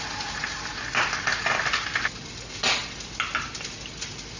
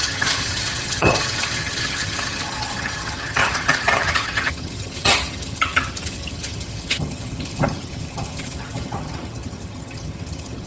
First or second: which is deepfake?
second